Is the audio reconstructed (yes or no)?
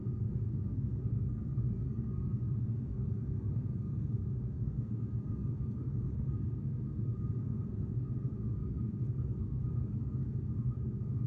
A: yes